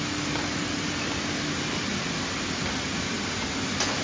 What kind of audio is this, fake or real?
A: real